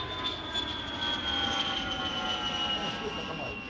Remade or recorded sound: recorded